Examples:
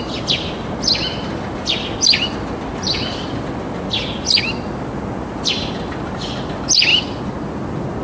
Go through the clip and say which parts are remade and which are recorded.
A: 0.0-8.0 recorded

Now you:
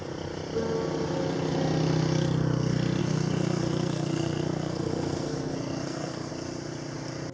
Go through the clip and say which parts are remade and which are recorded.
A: 0.0-3.0 recorded; 3.0-6.3 remade; 6.3-7.3 recorded

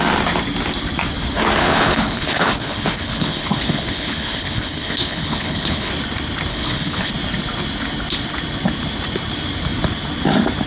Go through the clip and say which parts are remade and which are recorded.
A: 0.0-1.6 recorded; 1.6-5.9 remade; 5.9-6.5 recorded; 6.5-7.1 remade; 7.1-10.7 recorded

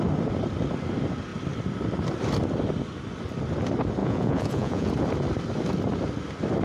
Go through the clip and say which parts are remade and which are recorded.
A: 0.0-4.0 recorded; 4.0-4.9 remade; 4.9-6.6 recorded

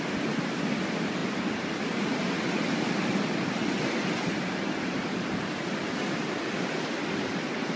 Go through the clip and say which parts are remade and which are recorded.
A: 0.0-7.8 recorded

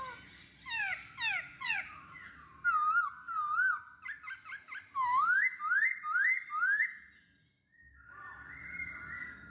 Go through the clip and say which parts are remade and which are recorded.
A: 0.0-1.5 recorded; 1.5-2.3 remade; 2.3-9.5 recorded

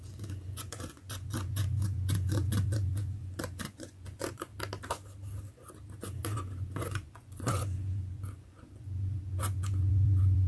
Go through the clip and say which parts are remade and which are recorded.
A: 0.0-4.5 remade; 4.5-6.0 recorded; 6.0-10.5 remade

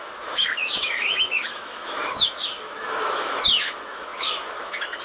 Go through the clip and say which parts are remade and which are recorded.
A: 0.0-5.0 remade